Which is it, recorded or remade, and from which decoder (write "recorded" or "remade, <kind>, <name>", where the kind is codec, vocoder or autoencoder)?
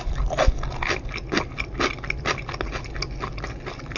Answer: recorded